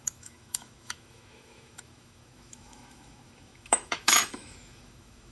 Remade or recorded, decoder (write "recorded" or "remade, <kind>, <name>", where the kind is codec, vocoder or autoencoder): remade, autoencoder, DAC-VAE